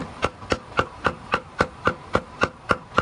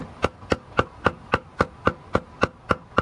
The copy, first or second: first